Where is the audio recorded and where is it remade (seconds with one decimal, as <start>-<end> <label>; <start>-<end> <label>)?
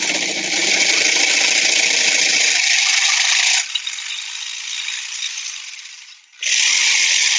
0.0-7.4 recorded